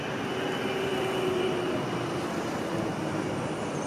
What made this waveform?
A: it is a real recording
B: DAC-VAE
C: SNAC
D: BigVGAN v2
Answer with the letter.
A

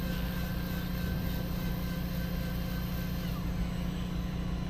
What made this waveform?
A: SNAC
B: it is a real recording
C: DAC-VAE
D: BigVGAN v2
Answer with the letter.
B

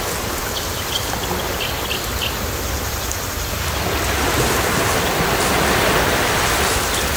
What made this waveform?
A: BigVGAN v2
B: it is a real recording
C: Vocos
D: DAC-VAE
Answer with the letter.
B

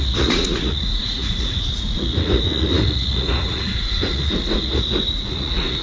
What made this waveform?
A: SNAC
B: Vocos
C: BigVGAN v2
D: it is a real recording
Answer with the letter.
B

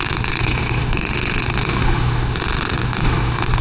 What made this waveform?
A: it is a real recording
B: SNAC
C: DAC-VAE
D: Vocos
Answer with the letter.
C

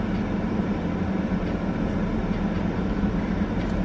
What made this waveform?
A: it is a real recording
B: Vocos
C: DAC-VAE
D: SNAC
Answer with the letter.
A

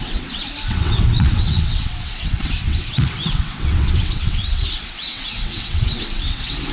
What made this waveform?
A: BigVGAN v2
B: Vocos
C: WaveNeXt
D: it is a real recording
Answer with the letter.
C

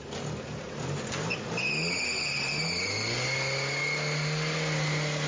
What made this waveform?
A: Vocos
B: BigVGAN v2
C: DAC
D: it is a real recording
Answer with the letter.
D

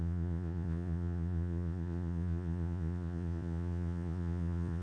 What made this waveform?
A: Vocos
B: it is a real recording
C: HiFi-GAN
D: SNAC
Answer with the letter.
A